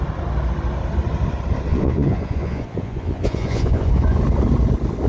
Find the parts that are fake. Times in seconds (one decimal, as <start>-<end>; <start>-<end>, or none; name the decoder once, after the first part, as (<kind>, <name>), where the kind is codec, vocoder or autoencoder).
1.7-4.2 (vocoder, Vocos)